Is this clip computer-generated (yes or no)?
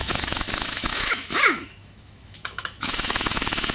yes